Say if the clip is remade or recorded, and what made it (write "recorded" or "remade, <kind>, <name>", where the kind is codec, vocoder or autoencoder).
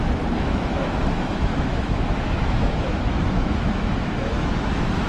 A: remade, autoencoder, DAC-VAE